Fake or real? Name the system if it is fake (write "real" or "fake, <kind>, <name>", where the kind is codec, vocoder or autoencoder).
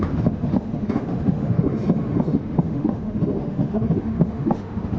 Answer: fake, autoencoder, DAC-VAE